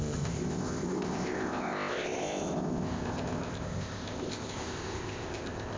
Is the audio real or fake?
fake